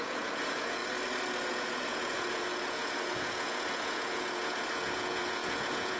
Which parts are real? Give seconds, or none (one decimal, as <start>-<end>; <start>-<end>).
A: 0.8-1.5